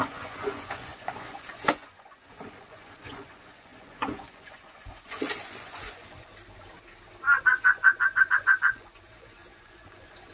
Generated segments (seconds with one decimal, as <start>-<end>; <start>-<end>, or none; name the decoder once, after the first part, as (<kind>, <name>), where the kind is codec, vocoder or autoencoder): 0.0-6.3 (vocoder, Vocos); 7.4-10.3